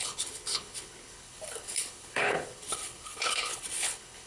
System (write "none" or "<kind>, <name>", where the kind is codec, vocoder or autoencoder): codec, HILCodec